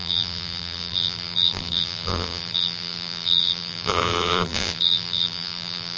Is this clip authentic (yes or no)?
no